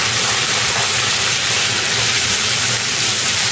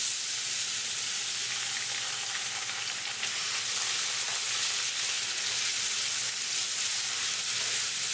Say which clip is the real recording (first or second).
second